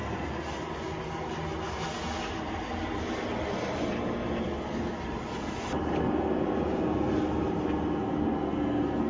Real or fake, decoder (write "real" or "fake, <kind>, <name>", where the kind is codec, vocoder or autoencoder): real